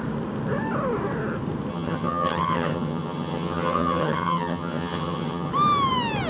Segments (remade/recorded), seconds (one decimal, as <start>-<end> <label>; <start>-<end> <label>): 0.0-1.7 recorded; 1.7-5.5 remade; 5.5-6.3 recorded